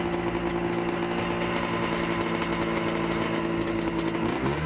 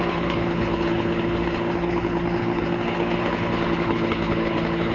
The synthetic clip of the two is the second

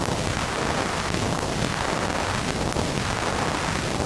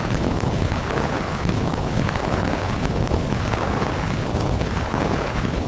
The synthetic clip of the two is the second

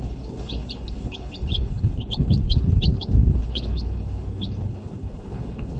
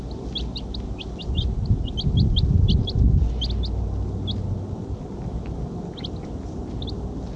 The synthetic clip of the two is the first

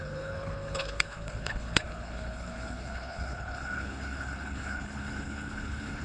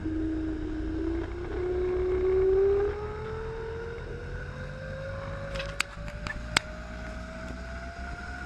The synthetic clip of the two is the first